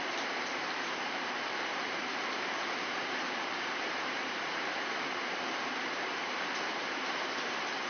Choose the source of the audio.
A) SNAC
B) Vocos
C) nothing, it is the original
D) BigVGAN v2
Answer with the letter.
D